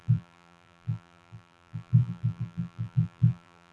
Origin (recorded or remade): remade